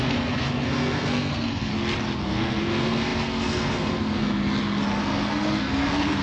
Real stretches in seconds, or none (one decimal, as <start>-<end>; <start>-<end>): 1.7-2.2; 4.4-5.0